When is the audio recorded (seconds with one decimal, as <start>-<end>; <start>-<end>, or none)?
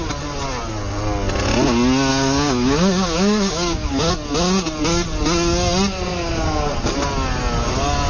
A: 0.0-2.1; 4.1-8.1